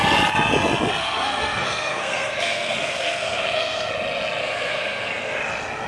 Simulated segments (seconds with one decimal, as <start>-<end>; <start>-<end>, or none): 1.0-3.9; 4.4-5.4